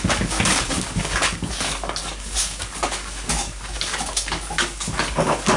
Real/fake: fake